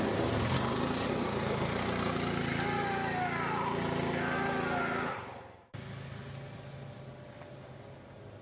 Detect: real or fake real